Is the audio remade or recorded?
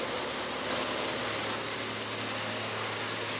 recorded